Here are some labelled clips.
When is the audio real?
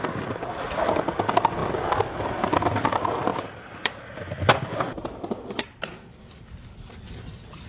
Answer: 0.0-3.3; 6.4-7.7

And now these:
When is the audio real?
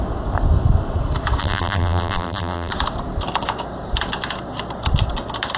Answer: 0.0-1.4; 2.7-5.6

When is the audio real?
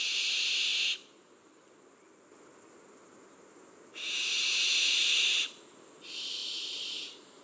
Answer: 0.7-4.6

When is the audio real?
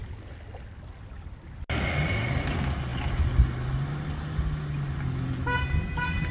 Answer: 0.0-6.3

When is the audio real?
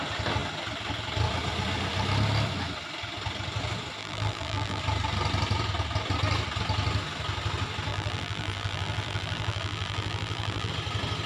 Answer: 0.0-4.0; 4.8-7.9; 10.7-11.3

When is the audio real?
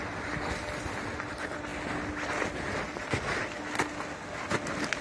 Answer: 0.0-5.0